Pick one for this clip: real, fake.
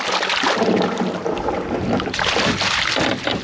real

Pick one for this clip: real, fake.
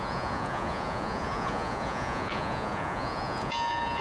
fake